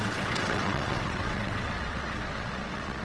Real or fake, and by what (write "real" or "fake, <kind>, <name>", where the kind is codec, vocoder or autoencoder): fake, vocoder, WaveNeXt